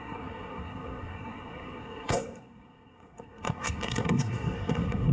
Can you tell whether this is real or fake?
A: fake